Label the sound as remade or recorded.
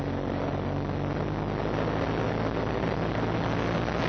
recorded